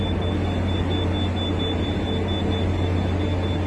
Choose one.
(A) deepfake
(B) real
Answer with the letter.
B